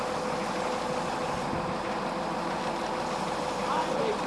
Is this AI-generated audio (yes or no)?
no